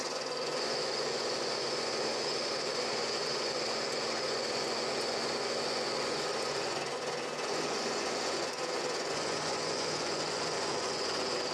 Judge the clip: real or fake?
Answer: fake